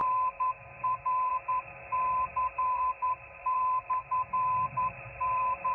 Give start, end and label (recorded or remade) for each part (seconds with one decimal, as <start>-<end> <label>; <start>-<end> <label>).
0.0-5.7 remade